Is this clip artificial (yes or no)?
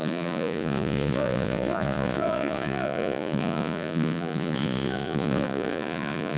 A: yes